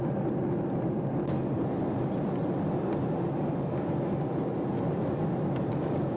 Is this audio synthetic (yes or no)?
no